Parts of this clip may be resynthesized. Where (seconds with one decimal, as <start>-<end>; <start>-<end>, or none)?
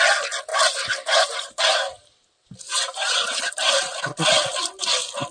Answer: 0.5-1.6; 2.7-4.0